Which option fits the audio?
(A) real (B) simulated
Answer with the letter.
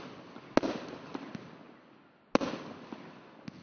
A